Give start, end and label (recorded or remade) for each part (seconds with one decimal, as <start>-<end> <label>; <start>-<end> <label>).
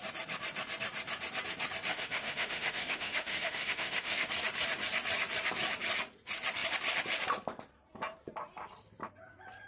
0.0-1.9 recorded; 1.9-4.3 remade; 4.3-9.7 recorded